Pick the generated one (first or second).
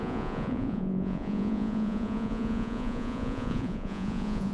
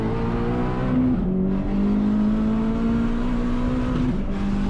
first